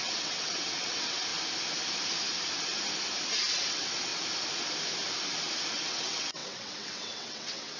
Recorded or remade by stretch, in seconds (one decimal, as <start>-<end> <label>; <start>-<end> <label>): 0.0-1.3 remade; 1.3-3.5 recorded; 3.5-4.1 remade; 4.1-5.7 recorded; 5.7-7.8 remade